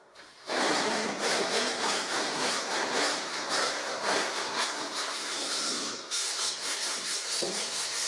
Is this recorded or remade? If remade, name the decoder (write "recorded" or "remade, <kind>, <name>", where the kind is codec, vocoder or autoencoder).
remade, codec, SNAC